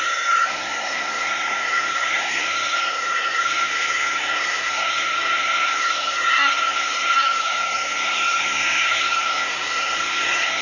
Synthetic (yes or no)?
yes